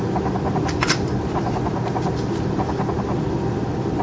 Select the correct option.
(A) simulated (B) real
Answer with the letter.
B